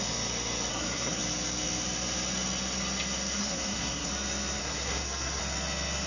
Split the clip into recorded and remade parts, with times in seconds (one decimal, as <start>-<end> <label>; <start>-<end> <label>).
0.0-0.7 recorded; 0.7-1.2 remade; 1.2-3.4 recorded; 3.4-4.1 remade; 4.1-4.6 recorded; 4.6-5.4 remade; 5.4-6.1 recorded